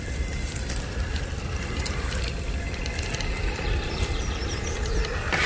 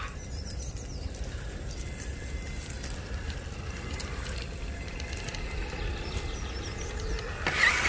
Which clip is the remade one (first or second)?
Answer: first